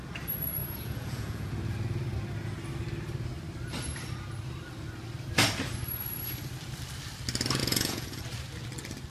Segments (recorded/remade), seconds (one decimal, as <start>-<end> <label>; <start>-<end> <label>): 0.0-0.6 recorded; 0.6-1.5 remade; 1.5-7.6 recorded; 7.6-8.2 remade; 8.2-9.1 recorded